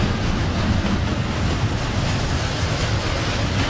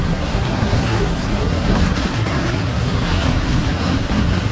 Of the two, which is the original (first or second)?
first